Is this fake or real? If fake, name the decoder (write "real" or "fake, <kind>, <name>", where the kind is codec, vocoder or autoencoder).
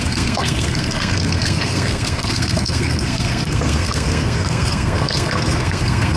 fake, codec, SNAC